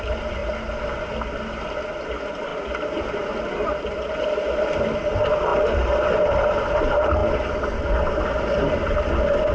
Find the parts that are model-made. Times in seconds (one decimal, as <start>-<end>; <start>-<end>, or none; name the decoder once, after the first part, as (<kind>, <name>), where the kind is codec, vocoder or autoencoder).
none